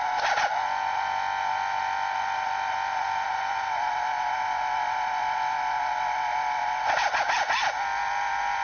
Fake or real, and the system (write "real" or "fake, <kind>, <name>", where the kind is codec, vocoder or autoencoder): real